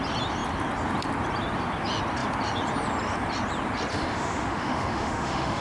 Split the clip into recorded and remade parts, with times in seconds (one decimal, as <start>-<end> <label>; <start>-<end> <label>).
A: 0.0-3.9 recorded; 3.9-5.6 remade